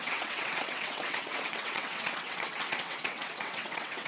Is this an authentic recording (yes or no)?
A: no